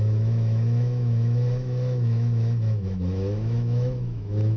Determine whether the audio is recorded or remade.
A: remade